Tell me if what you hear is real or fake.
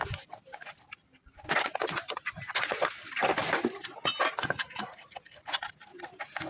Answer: real